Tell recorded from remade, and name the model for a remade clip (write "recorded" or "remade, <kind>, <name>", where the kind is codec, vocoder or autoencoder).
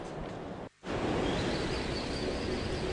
remade, vocoder, BigVGAN v2